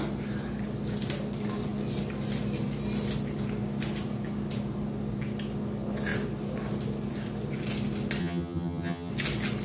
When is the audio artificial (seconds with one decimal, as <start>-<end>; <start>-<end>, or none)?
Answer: 8.2-9.1